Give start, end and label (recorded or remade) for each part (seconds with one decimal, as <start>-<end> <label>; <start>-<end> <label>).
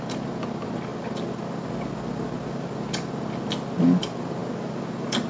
0.0-5.3 recorded